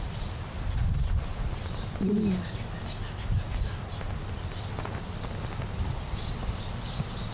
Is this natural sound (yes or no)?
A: yes